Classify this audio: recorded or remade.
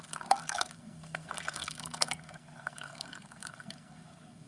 remade